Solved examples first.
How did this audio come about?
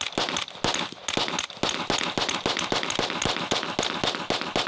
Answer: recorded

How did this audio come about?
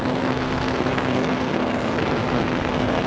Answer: remade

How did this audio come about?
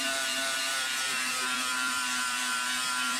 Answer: remade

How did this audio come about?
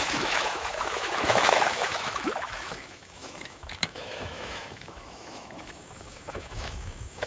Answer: remade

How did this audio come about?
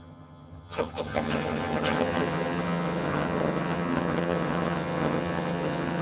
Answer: remade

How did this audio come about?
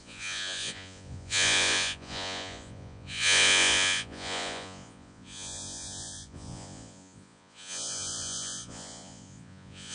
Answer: remade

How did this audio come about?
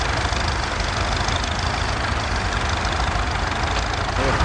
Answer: recorded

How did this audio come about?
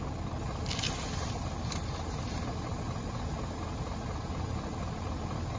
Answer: recorded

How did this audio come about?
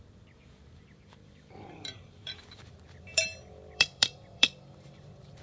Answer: remade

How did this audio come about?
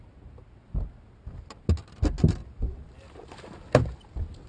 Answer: recorded